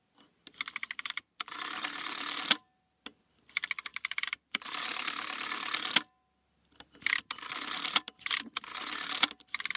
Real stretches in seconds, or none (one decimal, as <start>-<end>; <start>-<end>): 0.0-9.8